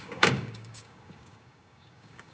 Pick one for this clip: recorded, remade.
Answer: remade